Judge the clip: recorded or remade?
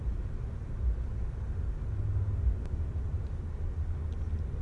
recorded